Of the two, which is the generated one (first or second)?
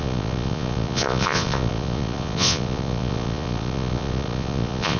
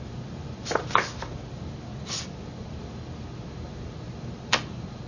first